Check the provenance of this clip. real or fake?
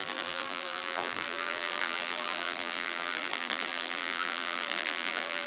fake